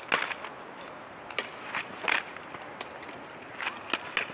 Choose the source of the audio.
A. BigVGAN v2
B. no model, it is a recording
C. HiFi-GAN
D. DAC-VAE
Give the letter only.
B